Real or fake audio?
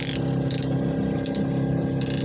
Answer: real